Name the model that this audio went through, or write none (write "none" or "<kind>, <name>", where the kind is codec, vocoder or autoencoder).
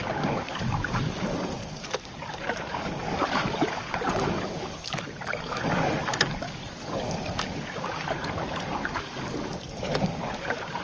codec, DAC